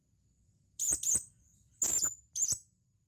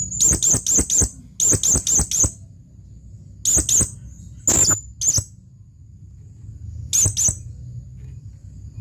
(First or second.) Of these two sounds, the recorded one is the second